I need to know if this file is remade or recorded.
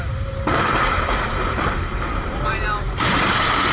remade